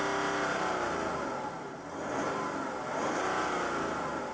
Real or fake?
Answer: real